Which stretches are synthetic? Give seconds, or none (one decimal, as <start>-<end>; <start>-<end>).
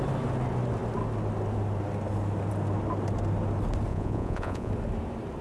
3.9-4.7